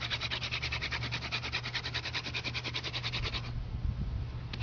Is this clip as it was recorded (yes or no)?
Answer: yes